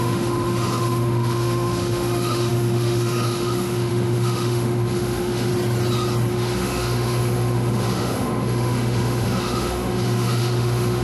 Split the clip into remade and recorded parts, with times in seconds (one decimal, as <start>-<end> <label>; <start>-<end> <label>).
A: 0.0-5.5 remade; 5.5-6.3 recorded; 6.3-11.0 remade